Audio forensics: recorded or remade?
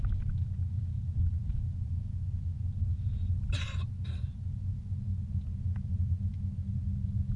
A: recorded